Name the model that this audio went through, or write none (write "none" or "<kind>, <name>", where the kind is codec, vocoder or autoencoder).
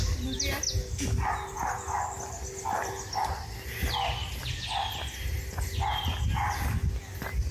none